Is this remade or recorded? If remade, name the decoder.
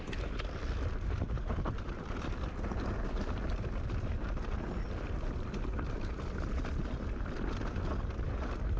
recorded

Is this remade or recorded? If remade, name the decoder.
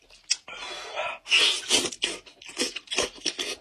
recorded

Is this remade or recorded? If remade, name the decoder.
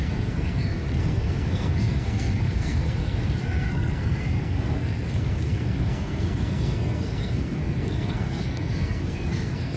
remade, codec, SNAC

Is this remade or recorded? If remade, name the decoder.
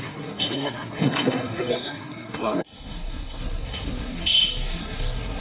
remade, codec, SNAC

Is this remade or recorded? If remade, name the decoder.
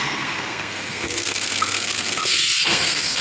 remade, codec, SNAC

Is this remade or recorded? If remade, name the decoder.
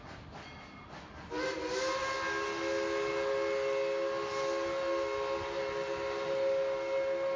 recorded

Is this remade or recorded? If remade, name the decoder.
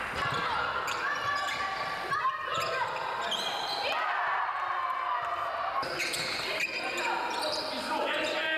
recorded